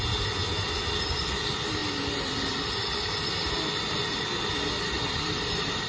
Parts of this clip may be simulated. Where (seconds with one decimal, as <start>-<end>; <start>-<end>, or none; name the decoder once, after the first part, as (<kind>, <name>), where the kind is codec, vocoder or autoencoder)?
none